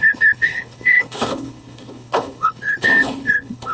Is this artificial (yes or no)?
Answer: yes